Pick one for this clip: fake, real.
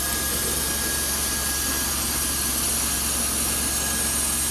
real